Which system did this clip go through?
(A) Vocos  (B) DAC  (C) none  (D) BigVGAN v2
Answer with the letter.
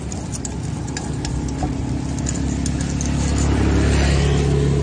C